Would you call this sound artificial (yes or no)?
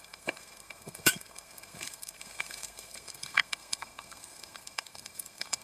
yes